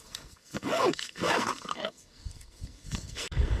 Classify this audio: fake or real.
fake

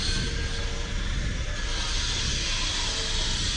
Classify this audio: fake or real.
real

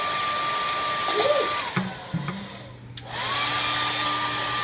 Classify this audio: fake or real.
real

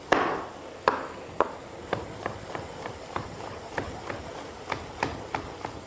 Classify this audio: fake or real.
real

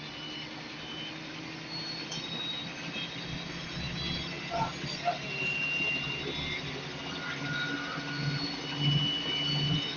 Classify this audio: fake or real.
real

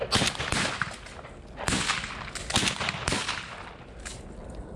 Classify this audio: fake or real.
real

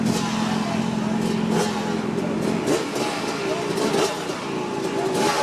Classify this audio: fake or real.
real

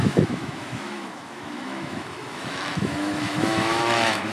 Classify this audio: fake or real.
fake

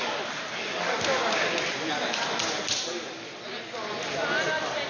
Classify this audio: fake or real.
real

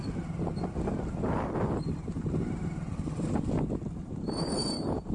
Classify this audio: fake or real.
real